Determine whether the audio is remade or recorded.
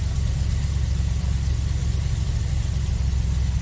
recorded